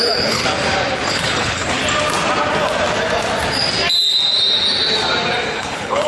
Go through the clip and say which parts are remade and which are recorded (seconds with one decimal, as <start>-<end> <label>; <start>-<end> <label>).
0.0-0.4 remade; 0.4-1.1 recorded; 1.1-1.8 remade; 1.8-5.5 recorded; 5.5-6.1 remade